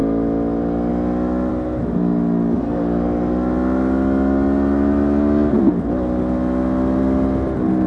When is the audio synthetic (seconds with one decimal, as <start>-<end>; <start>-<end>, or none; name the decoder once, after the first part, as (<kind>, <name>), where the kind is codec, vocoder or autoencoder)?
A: none